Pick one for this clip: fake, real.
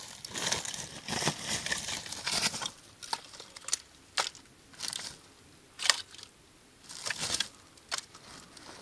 real